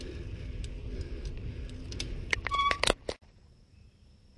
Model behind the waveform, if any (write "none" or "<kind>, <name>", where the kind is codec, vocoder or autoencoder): none